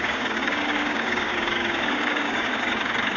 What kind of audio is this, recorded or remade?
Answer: remade